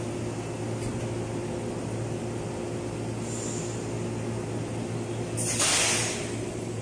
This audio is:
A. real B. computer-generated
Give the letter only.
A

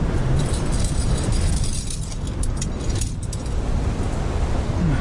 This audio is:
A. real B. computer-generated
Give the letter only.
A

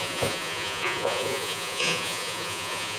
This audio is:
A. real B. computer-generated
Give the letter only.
B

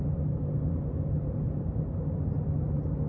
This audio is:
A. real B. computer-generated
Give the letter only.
A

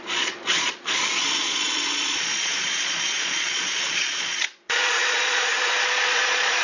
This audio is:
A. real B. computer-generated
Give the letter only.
B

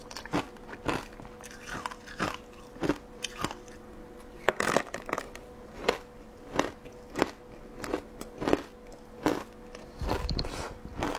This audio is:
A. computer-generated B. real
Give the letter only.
B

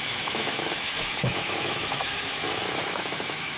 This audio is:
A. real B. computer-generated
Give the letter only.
B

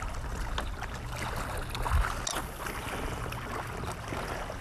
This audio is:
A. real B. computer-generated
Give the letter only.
A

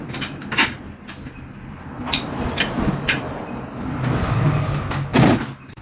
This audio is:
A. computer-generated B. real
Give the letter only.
B